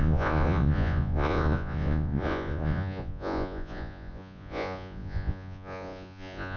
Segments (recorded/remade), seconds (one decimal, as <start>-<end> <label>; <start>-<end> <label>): 0.0-6.6 remade